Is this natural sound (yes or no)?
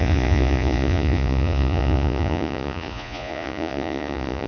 no